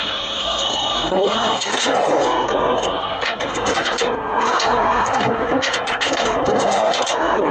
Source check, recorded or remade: remade